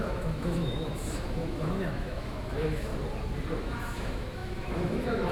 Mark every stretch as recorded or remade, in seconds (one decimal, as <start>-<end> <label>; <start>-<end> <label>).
0.0-2.9 remade; 2.9-3.6 recorded; 3.6-5.3 remade